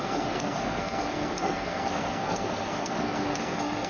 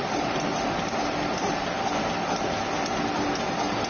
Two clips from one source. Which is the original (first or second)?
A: second